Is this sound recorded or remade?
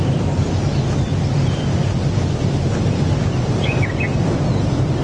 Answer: recorded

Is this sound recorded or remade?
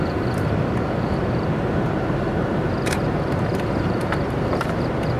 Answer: remade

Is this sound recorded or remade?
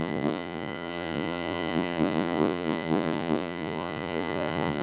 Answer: remade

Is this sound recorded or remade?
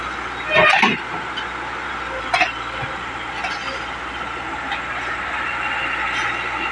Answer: recorded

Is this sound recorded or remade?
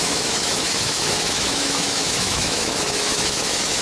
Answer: remade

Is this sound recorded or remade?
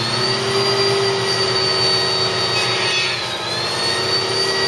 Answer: recorded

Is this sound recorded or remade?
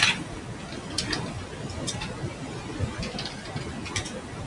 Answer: recorded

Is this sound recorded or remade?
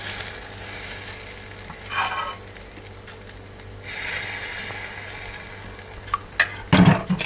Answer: recorded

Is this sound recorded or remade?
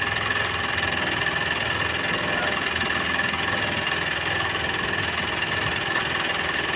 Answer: recorded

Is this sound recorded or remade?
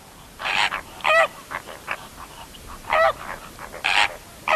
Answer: remade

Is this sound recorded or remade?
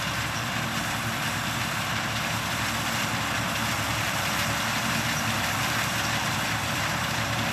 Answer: remade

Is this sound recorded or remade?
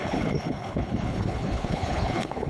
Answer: remade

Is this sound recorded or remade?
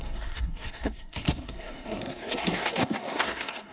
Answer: remade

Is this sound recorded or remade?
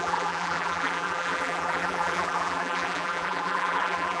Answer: remade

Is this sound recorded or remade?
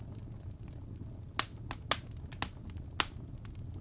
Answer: recorded